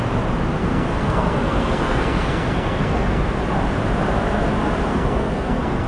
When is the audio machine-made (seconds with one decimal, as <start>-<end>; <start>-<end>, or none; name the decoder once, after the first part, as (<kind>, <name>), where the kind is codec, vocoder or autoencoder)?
0.6-3.4 (codec, SNAC); 4.9-5.9

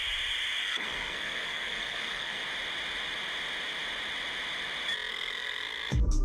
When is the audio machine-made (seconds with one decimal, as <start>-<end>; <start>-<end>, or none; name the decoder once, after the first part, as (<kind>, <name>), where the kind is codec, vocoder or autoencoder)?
0.6-2.4 (codec, SNAC); 5.1-6.2

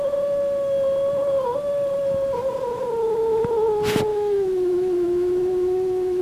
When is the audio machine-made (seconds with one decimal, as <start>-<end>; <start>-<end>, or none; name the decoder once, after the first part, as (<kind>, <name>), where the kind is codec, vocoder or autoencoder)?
4.1-6.2 (autoencoder, DAC-VAE)

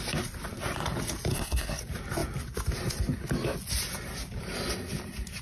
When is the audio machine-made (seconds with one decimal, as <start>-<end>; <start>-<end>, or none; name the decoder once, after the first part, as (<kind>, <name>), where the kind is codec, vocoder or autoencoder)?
1.3-1.8 (codec, SNAC)

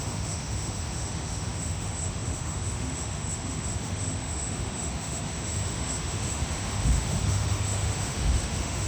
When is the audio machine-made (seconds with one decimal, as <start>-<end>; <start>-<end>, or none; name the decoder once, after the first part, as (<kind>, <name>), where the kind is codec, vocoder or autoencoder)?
0.0-8.9 (autoencoder, DAC-VAE)

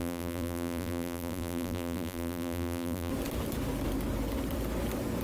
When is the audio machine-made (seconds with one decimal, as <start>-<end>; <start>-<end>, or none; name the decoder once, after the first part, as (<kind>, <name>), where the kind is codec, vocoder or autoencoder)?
0.0-3.1 (vocoder, BigVGAN v2)

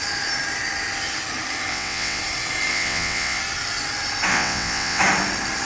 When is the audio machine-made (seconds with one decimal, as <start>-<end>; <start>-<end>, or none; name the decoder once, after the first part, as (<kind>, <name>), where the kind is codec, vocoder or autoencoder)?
1.7-2.2 (vocoder, WaveNeXt); 2.7-3.4; 4.3-5.0